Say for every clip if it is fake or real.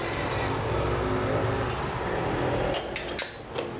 real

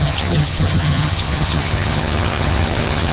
fake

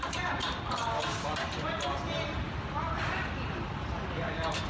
real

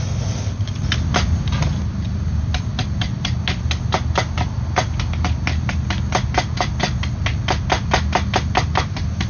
real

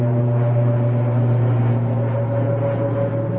real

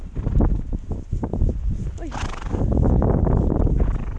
real